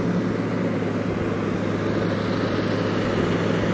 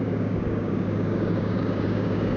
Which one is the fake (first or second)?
second